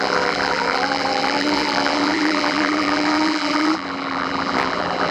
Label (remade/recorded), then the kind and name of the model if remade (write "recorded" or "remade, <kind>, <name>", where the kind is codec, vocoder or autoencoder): remade, vocoder, BigVGAN v2